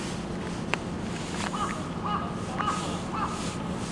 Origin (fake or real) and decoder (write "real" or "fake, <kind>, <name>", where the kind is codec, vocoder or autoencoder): real